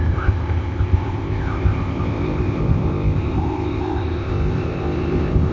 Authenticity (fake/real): fake